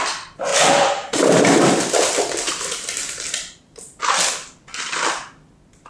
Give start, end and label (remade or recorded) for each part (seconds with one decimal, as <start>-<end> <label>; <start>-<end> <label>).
0.0-0.5 recorded; 0.5-4.0 remade; 4.0-5.9 recorded